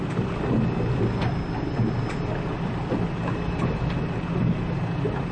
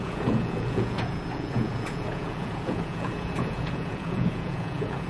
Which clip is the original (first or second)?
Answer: first